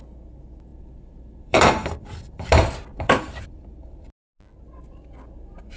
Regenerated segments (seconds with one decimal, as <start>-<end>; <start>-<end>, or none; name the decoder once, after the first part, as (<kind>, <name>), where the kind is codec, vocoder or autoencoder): 0.7-4.1 (vocoder, BigVGAN v2)